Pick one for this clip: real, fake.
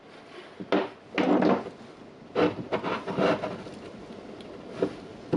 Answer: real